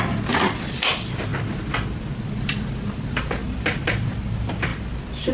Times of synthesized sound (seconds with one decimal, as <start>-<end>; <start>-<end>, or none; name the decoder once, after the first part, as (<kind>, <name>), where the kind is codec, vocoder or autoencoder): none